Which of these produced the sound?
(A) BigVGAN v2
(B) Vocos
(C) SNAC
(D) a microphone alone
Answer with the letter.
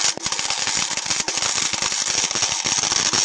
D